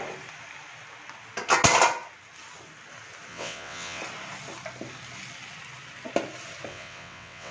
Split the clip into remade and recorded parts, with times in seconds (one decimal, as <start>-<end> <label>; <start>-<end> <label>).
0.0-3.3 recorded; 3.3-4.0 remade; 4.0-6.7 recorded; 6.7-7.5 remade